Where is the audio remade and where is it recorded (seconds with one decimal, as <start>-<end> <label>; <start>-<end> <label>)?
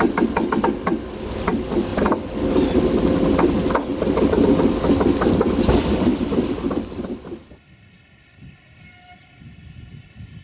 0.0-6.1 recorded; 6.1-7.5 remade; 7.5-10.4 recorded